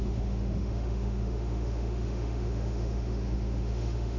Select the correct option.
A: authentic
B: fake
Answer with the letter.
B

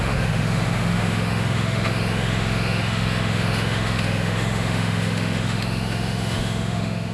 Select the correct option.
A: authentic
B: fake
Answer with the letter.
B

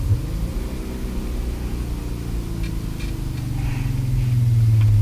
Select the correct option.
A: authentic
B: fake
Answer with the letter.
A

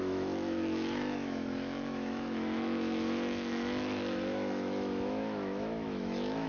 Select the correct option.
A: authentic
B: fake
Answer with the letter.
B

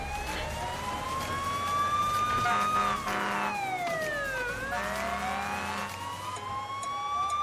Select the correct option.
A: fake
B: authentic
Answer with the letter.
B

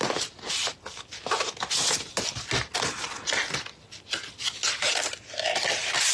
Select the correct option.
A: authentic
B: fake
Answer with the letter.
A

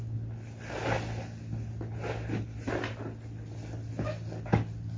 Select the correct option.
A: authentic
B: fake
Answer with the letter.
A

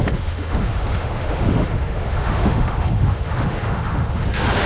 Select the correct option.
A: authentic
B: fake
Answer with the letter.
B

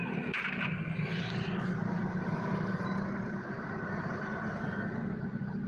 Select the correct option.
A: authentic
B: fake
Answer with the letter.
A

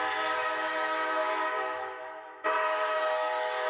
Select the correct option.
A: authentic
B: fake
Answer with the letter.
B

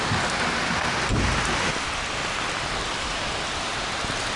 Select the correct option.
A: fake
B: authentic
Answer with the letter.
B